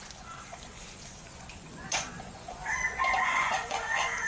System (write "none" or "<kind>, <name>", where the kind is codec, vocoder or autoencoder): vocoder, Vocos